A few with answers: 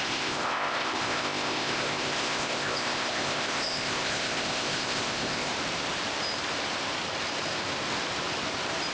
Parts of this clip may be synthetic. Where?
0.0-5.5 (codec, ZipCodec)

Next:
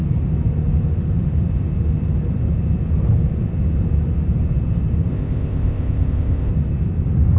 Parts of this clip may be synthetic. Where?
5.1-6.5 (codec, ZipCodec)

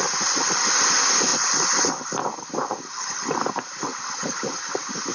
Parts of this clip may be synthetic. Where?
none

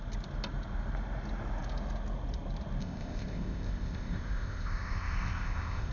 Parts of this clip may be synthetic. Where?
2.8-5.9 (codec, ZipCodec)

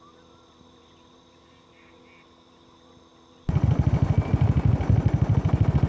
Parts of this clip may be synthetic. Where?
none

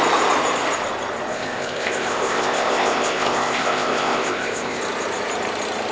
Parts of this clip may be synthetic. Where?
1.3-4.8 (codec, ZipCodec)